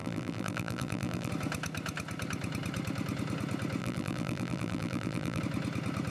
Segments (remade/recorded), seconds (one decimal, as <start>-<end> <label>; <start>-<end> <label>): 0.0-1.3 remade; 1.3-3.8 recorded; 3.8-5.4 remade; 5.4-6.1 recorded